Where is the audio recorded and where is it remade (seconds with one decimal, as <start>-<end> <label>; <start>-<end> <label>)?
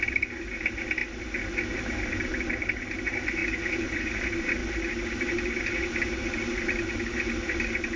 0.0-3.4 recorded; 3.4-4.1 remade; 4.1-8.0 recorded